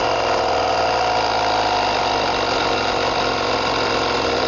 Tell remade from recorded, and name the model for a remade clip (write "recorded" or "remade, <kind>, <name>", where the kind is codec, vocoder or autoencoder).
recorded